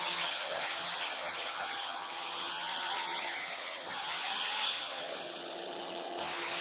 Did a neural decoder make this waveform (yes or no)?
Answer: yes